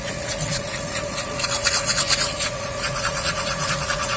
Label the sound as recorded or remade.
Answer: remade